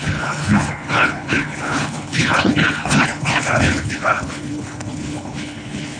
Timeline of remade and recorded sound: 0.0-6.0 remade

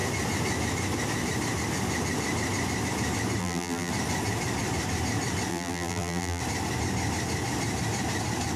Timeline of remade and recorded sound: 0.0-3.4 recorded; 3.4-3.9 remade; 3.9-5.5 recorded; 5.5-6.4 remade; 6.4-8.6 recorded

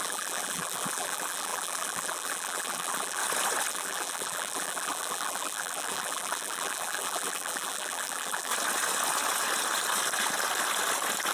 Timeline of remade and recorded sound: 0.0-3.2 remade; 3.2-3.7 recorded; 3.7-8.5 remade; 8.5-11.3 recorded

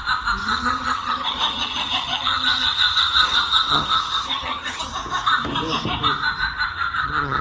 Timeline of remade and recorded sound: 0.0-0.4 recorded; 0.4-4.8 remade; 4.8-6.7 recorded; 6.7-7.4 remade

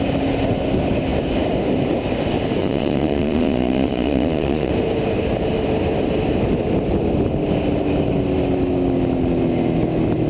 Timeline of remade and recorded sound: 0.0-2.6 recorded; 2.6-4.7 remade; 4.7-10.3 recorded

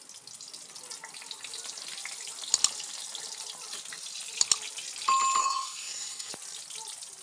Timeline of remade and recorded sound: 0.0-5.4 recorded; 5.4-6.3 remade; 6.3-7.2 recorded